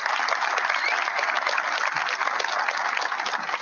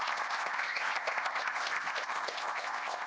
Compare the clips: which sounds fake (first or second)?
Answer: second